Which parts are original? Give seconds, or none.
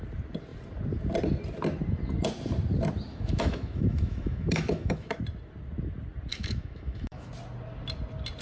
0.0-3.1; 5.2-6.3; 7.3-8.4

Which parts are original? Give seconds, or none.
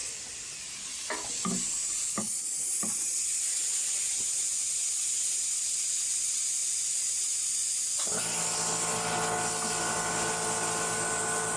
0.0-11.6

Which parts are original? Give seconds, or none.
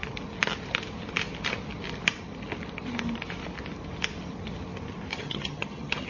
0.0-5.1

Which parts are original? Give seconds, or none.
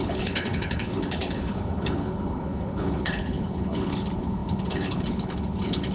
none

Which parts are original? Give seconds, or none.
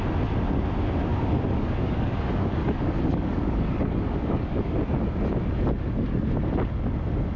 0.0-1.1; 4.8-7.4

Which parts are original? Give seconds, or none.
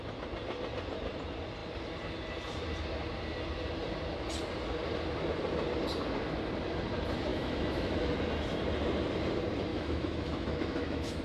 0.0-7.3; 8.2-9.7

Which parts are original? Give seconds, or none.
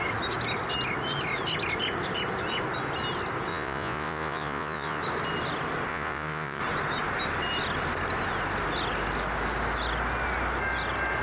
0.0-3.5; 5.0-5.9; 6.6-11.2